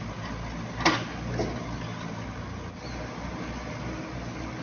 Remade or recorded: recorded